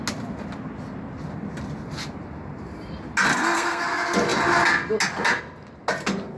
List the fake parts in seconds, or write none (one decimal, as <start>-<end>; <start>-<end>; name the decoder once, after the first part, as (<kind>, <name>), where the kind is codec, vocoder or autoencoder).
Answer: 3.3-3.8 (codec, SNAC)